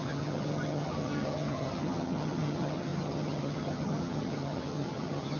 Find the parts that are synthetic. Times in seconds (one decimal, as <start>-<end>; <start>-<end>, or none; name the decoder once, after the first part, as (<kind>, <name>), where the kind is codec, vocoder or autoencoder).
0.0-5.4 (vocoder, HiFi-GAN)